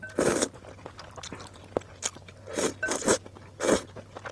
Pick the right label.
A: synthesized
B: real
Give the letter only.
B